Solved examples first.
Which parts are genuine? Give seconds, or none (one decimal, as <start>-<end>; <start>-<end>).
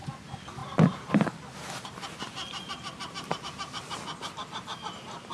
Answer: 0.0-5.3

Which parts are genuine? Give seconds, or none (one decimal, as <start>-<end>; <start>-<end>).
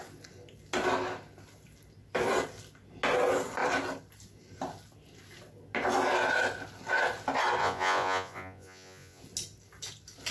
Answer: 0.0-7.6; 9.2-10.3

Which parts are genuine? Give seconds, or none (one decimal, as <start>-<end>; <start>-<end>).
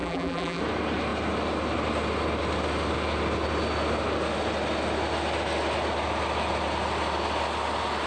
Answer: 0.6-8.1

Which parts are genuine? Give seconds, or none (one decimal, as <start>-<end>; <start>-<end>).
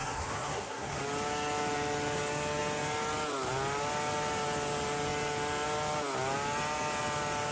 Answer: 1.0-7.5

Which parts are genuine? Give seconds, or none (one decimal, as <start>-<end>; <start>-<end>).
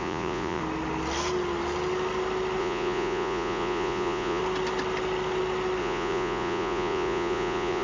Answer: 0.6-2.6; 4.4-5.8